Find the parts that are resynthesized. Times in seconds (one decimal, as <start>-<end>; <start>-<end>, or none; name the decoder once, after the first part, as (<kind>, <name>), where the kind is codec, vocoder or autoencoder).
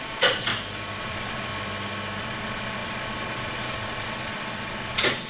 0.0-0.5 (vocoder, Vocos); 1.0-1.5; 2.2-5.3